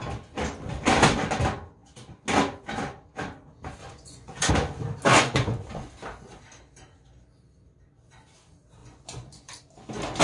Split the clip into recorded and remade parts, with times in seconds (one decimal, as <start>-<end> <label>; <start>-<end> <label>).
0.0-3.8 recorded; 3.8-4.5 remade; 4.5-5.1 recorded; 5.1-5.9 remade; 5.9-8.8 recorded; 8.8-9.5 remade; 9.5-10.2 recorded